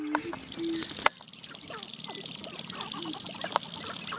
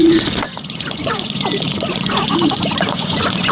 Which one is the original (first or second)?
first